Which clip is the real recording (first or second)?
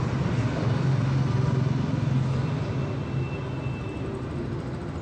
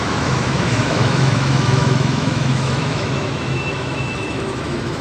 first